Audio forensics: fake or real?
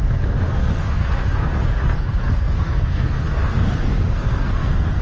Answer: fake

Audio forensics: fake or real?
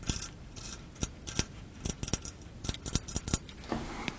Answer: real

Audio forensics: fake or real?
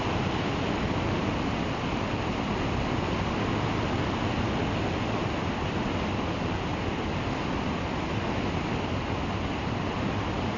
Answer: real